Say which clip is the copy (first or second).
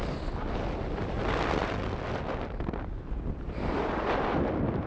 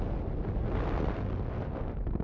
first